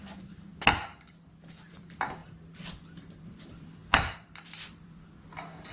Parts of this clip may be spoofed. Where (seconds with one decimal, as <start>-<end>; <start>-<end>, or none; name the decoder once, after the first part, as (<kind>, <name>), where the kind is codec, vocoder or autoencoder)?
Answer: 0.0-0.5 (vocoder, BigVGAN v2); 1.7-2.2; 3.1-5.7